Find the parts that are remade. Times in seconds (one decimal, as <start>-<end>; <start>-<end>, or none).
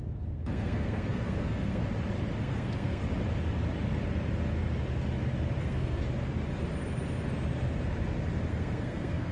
0.0-1.8; 2.4-3.0; 5.6-6.0; 8.5-9.3